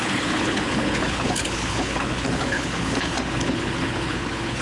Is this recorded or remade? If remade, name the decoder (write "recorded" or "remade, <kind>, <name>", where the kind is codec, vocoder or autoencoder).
remade, codec, HILCodec